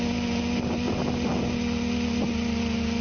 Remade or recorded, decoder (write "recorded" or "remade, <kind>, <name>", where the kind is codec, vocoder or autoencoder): recorded